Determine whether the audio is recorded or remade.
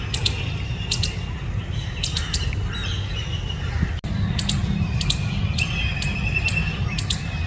recorded